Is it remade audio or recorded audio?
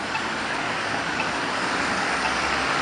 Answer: remade